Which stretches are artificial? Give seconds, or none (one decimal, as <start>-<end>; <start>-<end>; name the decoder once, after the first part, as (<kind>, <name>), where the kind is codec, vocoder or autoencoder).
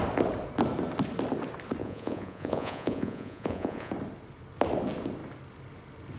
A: 1.8-3.9 (vocoder, Vocos)